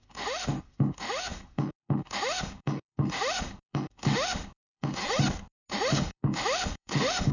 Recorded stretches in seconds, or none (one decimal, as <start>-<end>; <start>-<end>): 5.0-5.7